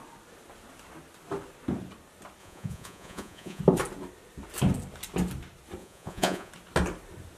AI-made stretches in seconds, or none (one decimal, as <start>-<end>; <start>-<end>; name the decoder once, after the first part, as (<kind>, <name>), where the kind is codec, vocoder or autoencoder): 2.4-3.6 (vocoder, Vocos); 5.8-6.5